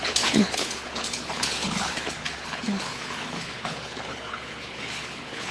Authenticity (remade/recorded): remade